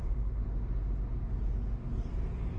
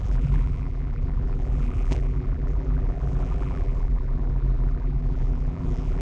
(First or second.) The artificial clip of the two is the second